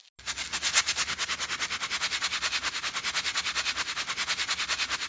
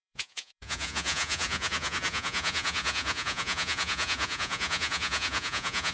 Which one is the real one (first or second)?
first